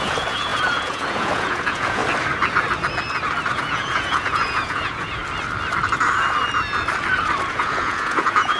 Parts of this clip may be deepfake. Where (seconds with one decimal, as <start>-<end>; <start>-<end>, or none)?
0.0-2.0; 3.5-5.2; 7.5-8.6